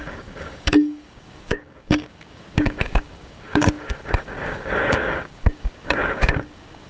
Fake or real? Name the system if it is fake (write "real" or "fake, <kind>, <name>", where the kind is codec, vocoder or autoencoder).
fake, codec, DAC